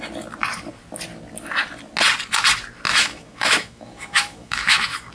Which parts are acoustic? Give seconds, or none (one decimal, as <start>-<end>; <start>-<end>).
0.0-2.9

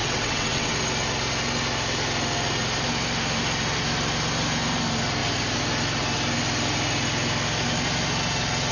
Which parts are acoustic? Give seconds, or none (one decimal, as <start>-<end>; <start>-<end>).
0.7-8.7